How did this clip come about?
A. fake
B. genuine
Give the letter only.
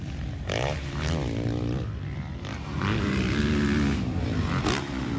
B